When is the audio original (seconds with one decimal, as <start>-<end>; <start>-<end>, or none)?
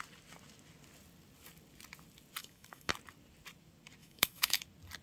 0.0-2.4; 2.9-4.0; 4.6-5.0